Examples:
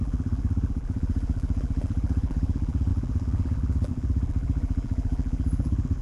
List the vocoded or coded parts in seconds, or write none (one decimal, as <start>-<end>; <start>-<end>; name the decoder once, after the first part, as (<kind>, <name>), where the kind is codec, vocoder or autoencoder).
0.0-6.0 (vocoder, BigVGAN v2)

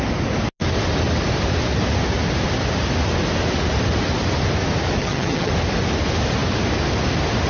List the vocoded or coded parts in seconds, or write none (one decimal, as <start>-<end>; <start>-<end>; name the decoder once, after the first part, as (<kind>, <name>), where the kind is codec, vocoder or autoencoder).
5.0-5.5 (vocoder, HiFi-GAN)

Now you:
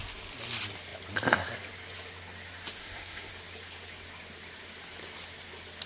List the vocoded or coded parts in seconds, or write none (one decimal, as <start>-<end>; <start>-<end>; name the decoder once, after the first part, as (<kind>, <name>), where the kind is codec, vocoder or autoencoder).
2.8-3.3 (autoencoder, DAC-VAE)

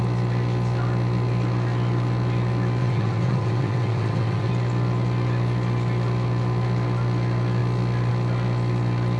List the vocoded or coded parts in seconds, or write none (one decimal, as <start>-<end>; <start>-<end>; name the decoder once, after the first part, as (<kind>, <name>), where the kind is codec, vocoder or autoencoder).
2.8-4.5 (vocoder, WaveNeXt)

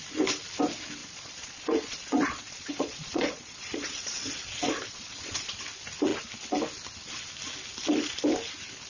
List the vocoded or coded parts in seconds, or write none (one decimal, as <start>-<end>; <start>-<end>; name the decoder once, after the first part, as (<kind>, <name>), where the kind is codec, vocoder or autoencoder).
1.0-5.6 (vocoder, Vocos)